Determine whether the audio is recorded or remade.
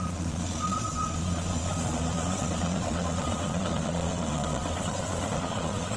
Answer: remade